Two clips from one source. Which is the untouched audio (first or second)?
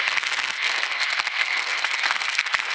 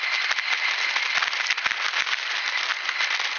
second